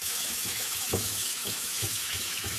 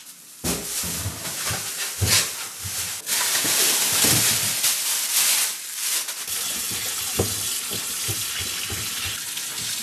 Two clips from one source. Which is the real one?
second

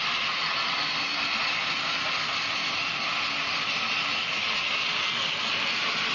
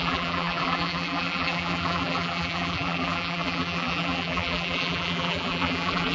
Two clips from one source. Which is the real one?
first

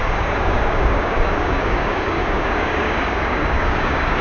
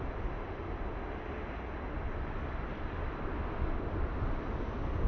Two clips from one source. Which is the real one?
second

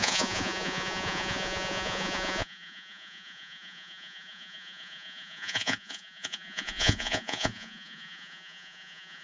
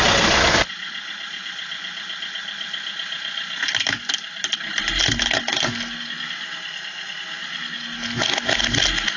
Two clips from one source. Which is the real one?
second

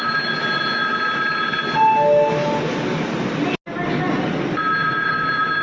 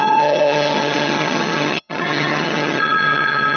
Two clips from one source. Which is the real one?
first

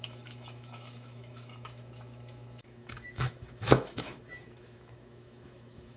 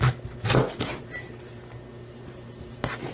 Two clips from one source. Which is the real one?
second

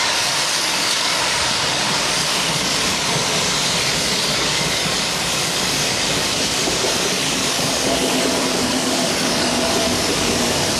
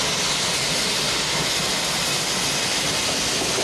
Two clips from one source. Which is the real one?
second